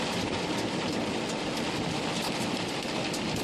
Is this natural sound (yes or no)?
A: yes